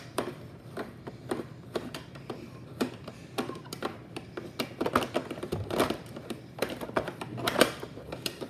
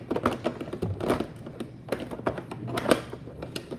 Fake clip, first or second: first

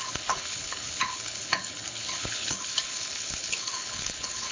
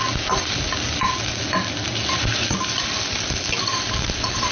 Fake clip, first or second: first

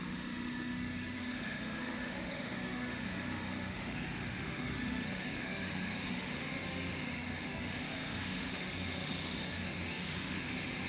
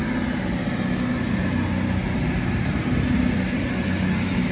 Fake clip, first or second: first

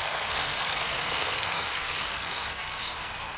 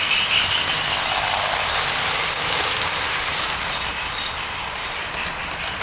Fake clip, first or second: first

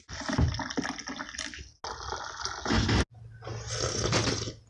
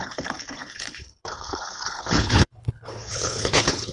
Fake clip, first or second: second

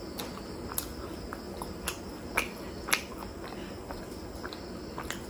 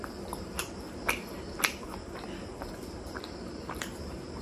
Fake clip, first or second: second